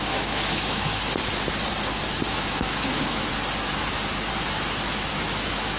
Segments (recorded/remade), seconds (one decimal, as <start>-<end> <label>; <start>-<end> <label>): 0.0-0.9 remade; 0.9-2.3 recorded; 2.3-3.3 remade; 3.3-5.1 recorded; 5.1-5.8 remade